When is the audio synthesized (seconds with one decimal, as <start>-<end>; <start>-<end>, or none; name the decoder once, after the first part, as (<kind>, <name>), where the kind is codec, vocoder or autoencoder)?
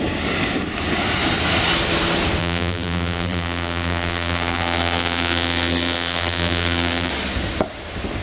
2.4-7.1 (vocoder, BigVGAN v2)